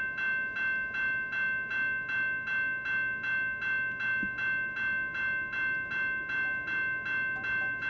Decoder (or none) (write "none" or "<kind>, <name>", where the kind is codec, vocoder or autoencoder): none